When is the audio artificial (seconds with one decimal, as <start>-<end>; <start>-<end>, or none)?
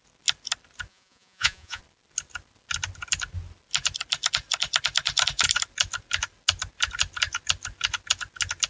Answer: 0.9-1.8